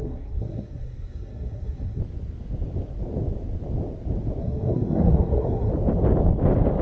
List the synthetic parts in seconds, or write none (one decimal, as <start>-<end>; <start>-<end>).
0.0-2.0; 4.4-5.7